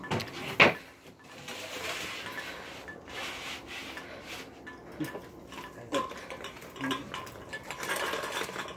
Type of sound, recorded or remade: recorded